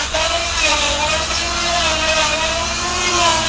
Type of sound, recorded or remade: remade